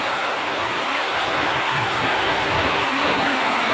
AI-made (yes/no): yes